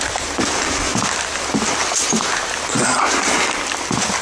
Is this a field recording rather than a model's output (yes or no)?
yes